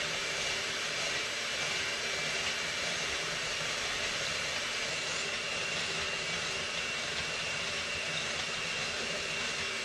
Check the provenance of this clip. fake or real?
fake